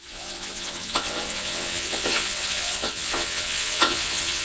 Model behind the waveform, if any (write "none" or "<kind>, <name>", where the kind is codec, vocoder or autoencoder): vocoder, WaveNeXt